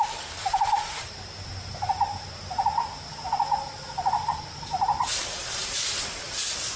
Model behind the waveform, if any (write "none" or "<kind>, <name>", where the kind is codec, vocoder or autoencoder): none